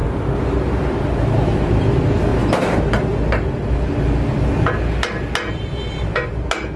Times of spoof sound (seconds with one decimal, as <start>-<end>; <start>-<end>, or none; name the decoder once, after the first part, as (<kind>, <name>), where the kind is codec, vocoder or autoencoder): none